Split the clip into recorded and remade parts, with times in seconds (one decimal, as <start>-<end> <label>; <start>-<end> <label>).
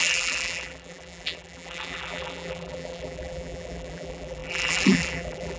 0.0-5.6 remade